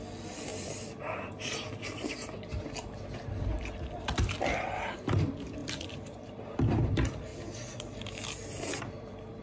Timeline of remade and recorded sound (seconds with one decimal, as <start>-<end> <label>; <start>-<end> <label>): 0.0-7.3 remade; 7.3-8.8 recorded; 8.8-9.4 remade